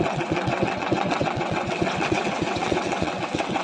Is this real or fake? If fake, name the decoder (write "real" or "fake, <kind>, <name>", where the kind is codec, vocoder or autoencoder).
fake, vocoder, WaveNeXt